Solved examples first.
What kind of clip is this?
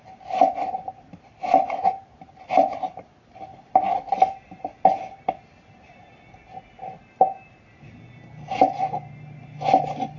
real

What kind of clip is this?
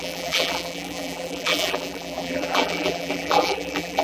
fake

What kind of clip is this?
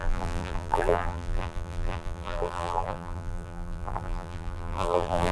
fake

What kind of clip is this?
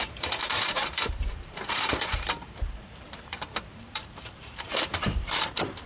fake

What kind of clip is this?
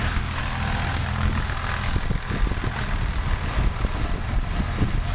real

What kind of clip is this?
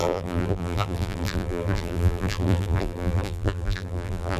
fake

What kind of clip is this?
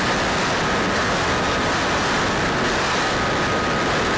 real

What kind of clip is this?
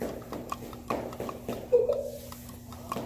real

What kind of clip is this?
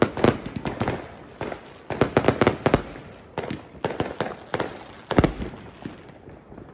real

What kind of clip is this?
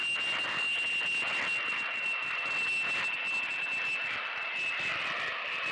real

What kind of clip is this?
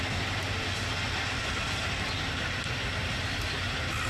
real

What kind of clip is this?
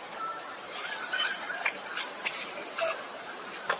fake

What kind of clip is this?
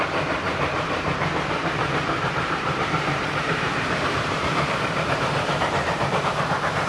fake